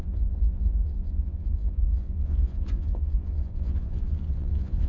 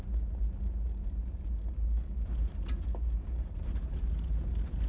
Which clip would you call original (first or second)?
second